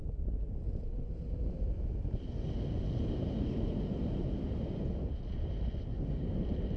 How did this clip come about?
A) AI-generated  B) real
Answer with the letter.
B